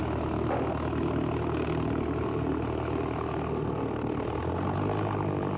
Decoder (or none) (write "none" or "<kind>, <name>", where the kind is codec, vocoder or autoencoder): none